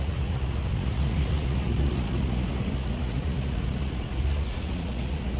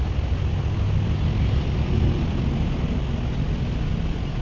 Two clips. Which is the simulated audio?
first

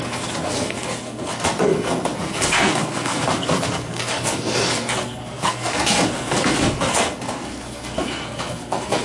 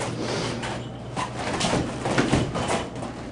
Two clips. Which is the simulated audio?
first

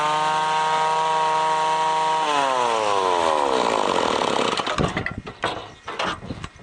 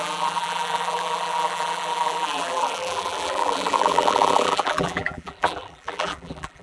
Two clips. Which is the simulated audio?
second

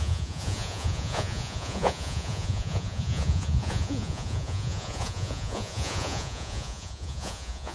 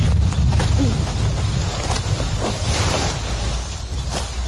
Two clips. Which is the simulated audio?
first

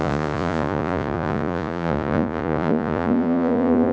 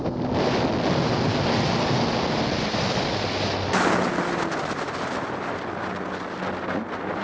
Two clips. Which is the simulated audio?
first